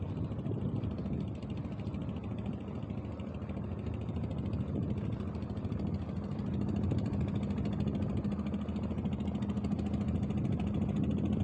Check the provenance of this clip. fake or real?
real